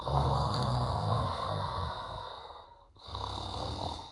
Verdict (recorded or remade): remade